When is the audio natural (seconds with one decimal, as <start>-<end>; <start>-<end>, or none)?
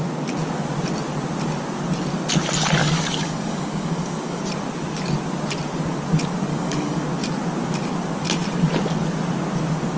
0.0-2.8; 4.4-6.5; 7.0-10.0